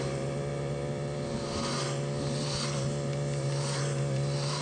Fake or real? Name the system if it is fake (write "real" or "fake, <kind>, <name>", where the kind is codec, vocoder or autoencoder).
real